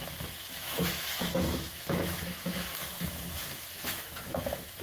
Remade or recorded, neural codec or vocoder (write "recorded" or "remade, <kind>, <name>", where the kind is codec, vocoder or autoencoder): remade, autoencoder, DAC-VAE